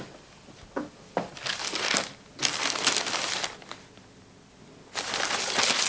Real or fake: real